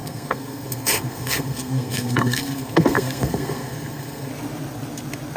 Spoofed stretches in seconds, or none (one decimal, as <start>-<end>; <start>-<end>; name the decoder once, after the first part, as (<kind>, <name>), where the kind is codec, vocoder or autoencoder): 0.0-4.3 (codec, SNAC)